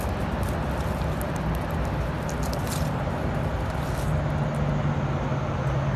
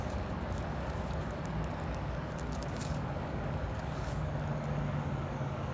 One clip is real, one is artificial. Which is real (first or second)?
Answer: first